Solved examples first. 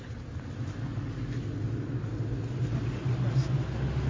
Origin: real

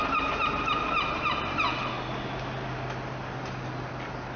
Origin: real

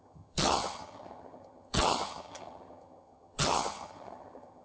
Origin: fake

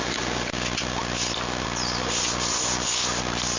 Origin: real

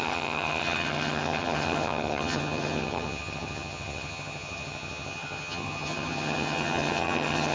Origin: fake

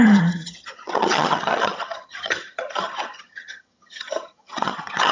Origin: fake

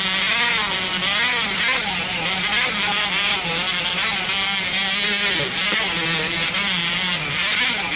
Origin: real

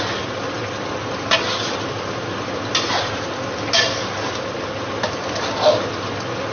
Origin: real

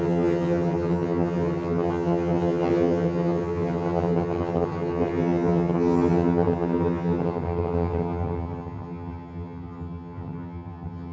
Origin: fake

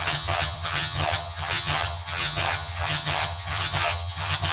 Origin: fake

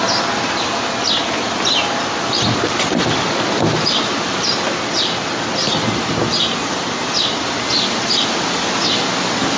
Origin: real